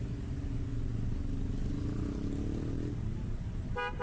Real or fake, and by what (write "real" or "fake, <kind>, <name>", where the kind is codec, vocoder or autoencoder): real